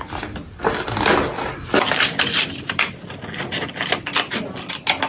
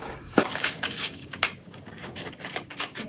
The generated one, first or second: second